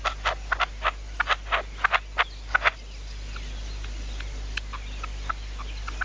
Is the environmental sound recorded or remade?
recorded